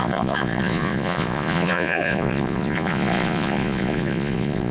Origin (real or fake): fake